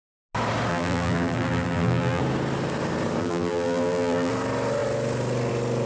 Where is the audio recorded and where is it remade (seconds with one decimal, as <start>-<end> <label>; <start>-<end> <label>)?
0.0-0.7 recorded; 0.7-2.2 remade; 2.2-3.2 recorded; 3.2-4.3 remade; 4.3-5.9 recorded